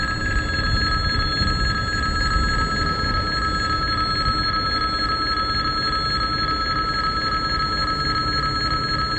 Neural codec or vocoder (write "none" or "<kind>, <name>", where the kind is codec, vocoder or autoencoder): none